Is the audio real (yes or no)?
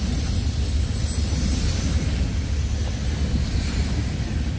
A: yes